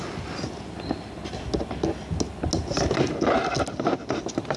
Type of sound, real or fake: real